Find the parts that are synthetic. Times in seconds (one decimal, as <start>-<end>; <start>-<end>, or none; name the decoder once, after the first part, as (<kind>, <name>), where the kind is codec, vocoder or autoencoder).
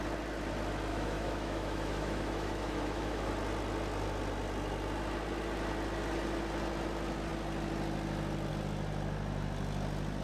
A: 0.9-3.3 (autoencoder, DAC-VAE)